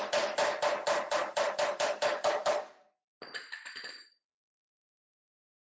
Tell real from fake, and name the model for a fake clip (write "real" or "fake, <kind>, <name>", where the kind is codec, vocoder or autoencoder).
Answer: real